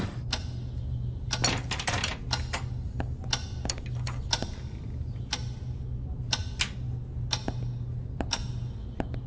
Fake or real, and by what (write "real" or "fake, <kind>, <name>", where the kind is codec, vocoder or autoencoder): real